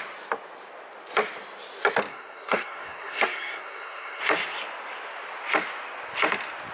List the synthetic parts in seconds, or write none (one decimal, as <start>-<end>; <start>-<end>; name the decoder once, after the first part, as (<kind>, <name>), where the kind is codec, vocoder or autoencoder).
2.1-4.2 (codec, SNAC)